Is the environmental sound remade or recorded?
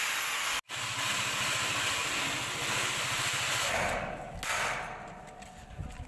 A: recorded